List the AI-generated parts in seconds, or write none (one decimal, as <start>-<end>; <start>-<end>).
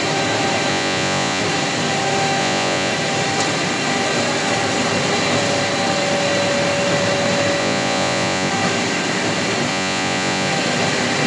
0.7-1.4; 2.4-2.9; 7.6-8.5; 9.7-10.5